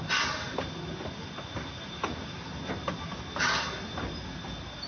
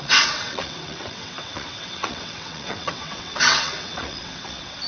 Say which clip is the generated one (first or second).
second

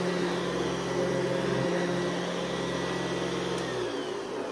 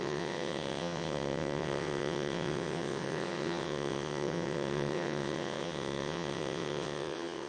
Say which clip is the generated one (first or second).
second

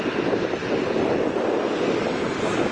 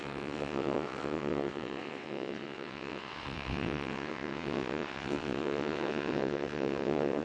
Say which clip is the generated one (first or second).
second